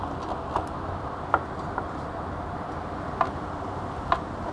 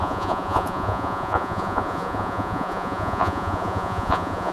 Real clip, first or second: first